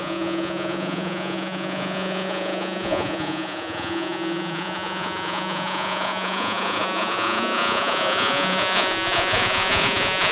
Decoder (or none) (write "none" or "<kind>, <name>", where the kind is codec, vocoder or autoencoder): vocoder, Vocos